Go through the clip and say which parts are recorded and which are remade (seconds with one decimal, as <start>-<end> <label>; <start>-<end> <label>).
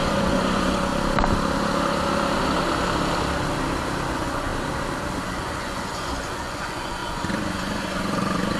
0.0-0.9 remade; 0.9-4.1 recorded; 4.1-4.5 remade; 4.5-5.2 recorded; 5.2-8.6 remade